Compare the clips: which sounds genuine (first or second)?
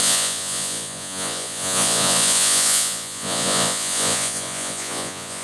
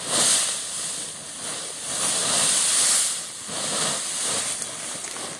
second